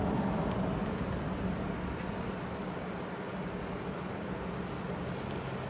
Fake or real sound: real